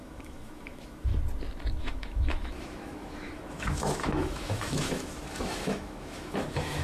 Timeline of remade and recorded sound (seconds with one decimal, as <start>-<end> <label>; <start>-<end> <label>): 0.0-1.1 remade; 1.1-1.8 recorded; 1.8-6.8 remade